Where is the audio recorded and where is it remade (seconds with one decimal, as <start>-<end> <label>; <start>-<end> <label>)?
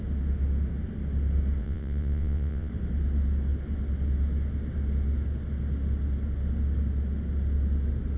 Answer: 0.0-1.6 recorded; 1.6-2.7 remade; 2.7-8.2 recorded